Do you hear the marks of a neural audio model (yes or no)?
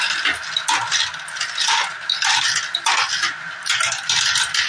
no